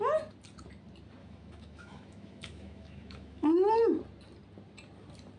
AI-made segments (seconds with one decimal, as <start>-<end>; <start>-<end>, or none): 1.2-3.7